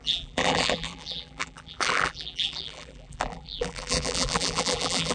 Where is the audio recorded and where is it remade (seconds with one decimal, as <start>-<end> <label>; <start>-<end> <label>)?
0.0-5.1 remade